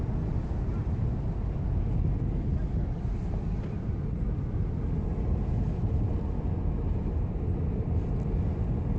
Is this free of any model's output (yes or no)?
yes